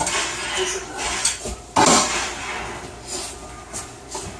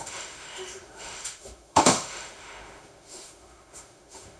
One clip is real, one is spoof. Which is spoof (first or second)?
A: second